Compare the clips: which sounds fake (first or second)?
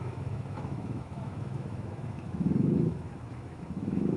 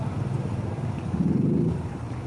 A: first